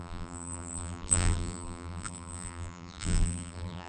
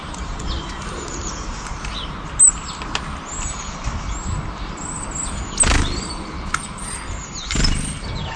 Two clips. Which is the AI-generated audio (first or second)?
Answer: first